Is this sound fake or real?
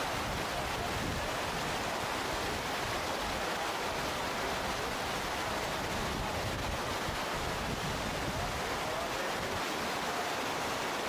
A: real